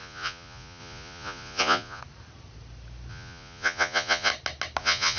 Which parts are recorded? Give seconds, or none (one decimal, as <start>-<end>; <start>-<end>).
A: 2.0-3.1; 4.3-4.8